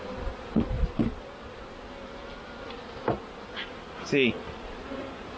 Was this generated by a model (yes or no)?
no